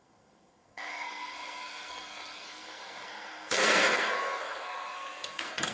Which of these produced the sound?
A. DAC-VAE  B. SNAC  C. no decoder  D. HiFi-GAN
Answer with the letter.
B